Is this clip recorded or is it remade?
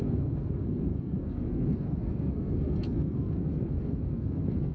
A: remade